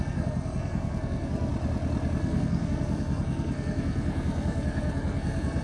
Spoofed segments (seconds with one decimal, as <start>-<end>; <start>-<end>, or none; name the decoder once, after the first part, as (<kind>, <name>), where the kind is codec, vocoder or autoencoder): 0.0-1.5 (codec, SNAC); 2.2-5.6